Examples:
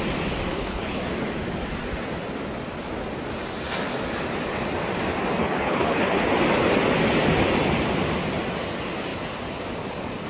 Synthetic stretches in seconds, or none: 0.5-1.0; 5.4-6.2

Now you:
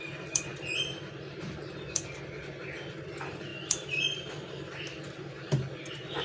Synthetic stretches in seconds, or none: 0.0-0.5; 2.9-6.2

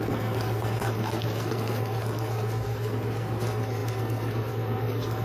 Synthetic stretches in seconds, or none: 0.0-5.2

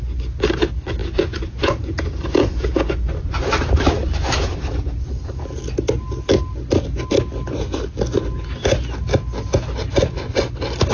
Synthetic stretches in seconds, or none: 1.0-2.9

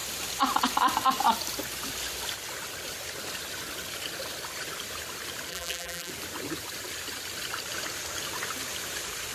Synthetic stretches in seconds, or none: 5.5-6.1

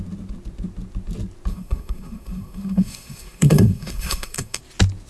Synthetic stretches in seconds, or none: 1.5-4.6